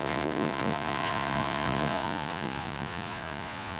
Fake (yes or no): yes